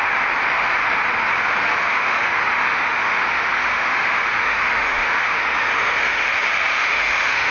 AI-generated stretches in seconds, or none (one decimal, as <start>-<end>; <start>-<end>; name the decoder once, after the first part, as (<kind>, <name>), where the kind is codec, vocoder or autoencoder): 1.8-6.3 (autoencoder, DAC-VAE); 6.8-7.5